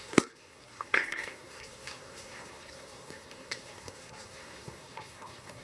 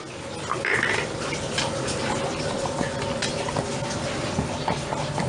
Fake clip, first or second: first